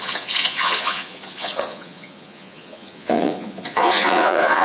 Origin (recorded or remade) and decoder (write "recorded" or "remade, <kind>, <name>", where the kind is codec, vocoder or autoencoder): remade, vocoder, Vocos